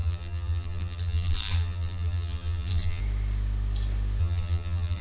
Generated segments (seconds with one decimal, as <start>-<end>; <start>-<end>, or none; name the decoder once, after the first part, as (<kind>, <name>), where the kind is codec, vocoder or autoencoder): 0.0-3.0 (vocoder, BigVGAN v2); 4.2-5.0